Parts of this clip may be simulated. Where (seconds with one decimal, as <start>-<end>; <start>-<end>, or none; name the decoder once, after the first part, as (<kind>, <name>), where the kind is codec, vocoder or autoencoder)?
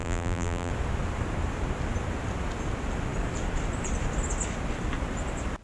0.0-0.7 (vocoder, BigVGAN v2)